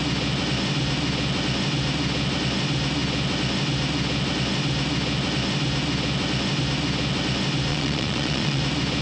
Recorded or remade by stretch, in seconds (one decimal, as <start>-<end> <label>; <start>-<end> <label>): 0.0-7.7 recorded; 7.7-8.6 remade; 8.6-9.0 recorded